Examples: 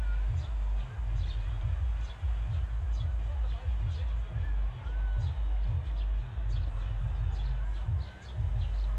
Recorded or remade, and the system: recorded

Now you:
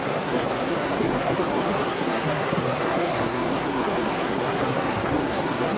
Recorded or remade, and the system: remade, codec, SNAC